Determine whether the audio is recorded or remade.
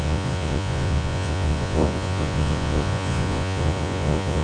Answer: remade